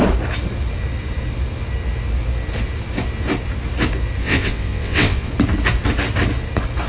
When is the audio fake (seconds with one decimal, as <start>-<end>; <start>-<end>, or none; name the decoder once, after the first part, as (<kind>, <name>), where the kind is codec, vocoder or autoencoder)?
4.2-5.3 (vocoder, WaveNeXt)